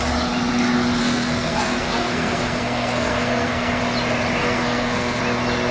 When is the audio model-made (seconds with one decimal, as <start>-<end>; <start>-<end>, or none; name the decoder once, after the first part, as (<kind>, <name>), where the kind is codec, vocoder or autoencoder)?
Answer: 1.0-3.8 (codec, SNAC); 4.4-5.2